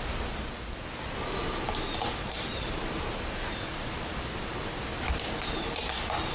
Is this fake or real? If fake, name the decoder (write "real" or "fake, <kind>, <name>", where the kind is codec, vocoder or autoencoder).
real